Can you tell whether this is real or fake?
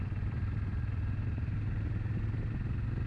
real